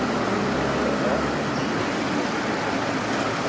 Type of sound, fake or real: real